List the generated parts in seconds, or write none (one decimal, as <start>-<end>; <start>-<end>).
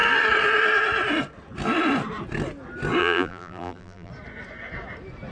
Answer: 3.0-4.1